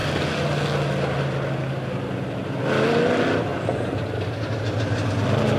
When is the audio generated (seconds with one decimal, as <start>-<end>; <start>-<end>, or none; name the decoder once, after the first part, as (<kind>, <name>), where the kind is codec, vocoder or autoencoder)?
none